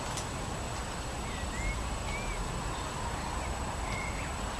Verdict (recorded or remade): recorded